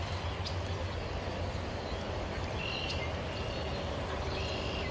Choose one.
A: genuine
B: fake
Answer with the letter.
A